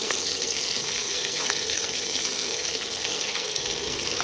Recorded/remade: remade